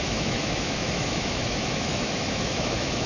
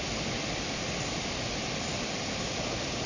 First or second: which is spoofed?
first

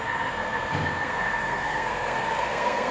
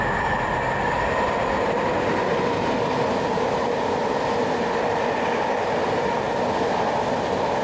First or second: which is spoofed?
first